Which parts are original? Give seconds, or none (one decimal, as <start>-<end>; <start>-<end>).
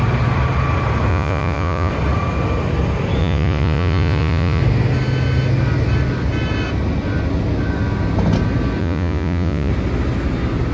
0.0-1.1; 1.9-3.2; 4.6-8.8; 9.7-10.7